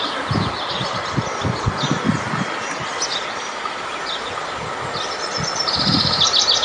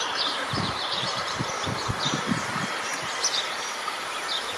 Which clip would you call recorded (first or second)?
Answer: first